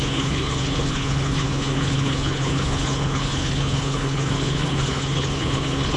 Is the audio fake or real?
fake